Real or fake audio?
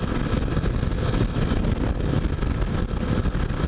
real